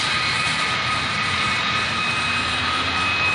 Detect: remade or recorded recorded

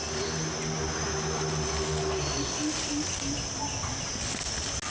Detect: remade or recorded recorded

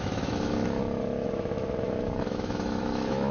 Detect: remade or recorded remade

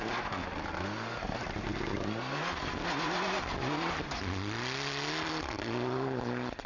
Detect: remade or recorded recorded